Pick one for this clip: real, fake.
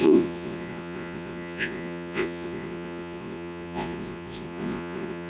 fake